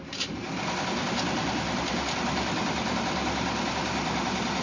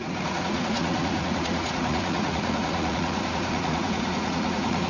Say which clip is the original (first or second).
first